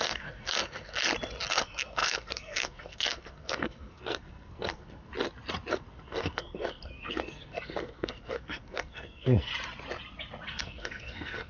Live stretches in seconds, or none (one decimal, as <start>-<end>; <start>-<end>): 1.0-1.5; 5.1-5.7; 9.5-10.5